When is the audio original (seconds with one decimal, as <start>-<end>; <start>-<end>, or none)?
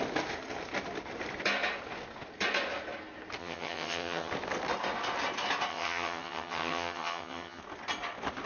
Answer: 0.0-3.4; 4.3-5.7; 7.6-8.5